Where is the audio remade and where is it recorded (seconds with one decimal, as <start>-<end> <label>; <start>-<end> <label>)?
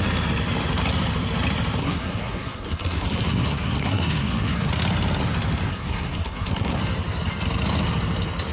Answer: 0.0-1.8 recorded; 1.8-4.7 remade; 4.7-5.7 recorded; 5.7-6.8 remade; 6.8-8.5 recorded